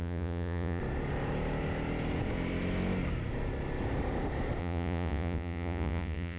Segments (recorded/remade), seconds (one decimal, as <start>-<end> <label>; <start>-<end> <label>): 0.0-0.8 remade; 0.8-4.6 recorded; 4.6-6.4 remade